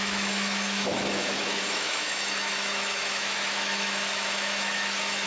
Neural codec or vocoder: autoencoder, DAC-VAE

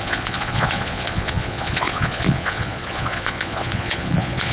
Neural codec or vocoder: vocoder, Vocos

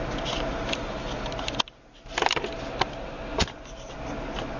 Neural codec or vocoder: none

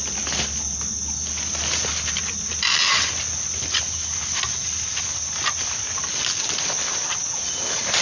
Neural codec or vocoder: none